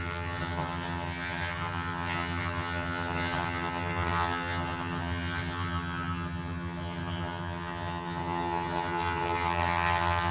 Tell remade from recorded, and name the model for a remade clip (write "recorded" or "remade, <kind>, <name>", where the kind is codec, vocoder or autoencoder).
remade, vocoder, HiFi-GAN